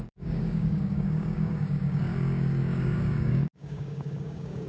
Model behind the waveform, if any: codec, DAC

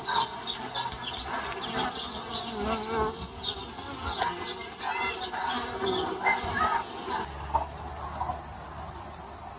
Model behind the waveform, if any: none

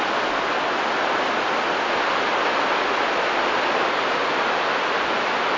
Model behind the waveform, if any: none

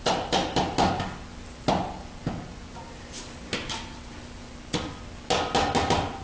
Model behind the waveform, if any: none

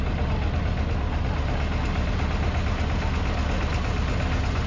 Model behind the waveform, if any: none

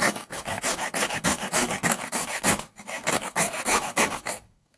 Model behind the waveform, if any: codec, DAC